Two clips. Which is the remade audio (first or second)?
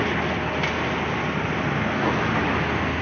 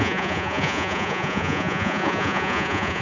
second